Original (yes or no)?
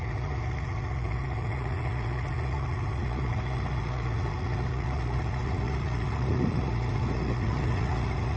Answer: no